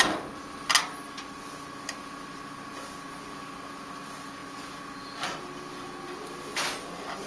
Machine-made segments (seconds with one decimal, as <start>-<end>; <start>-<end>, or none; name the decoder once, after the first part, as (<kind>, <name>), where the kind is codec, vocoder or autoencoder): none

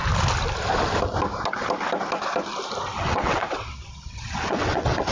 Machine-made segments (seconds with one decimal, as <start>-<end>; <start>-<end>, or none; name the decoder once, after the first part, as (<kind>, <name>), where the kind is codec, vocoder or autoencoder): 2.9-5.1 (vocoder, WaveNeXt)

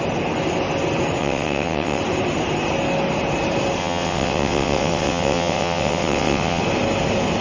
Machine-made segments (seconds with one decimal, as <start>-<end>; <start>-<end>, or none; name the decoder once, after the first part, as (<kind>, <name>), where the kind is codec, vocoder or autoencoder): 1.2-2.0 (vocoder, WaveNeXt); 3.8-6.6

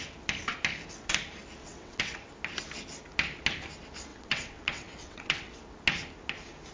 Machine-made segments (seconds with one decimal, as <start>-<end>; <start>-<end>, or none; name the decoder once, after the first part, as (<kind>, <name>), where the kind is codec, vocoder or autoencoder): 1.6-2.3 (vocoder, WaveNeXt); 4.1-5.6